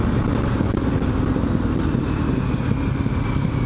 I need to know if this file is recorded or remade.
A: recorded